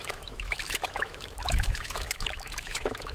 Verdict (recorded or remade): remade